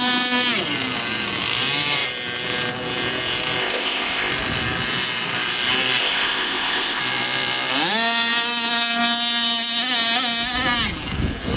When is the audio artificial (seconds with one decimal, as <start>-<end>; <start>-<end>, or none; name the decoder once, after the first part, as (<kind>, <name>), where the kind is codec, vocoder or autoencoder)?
3.6-4.3 (codec, ZipCodec); 6.0-7.0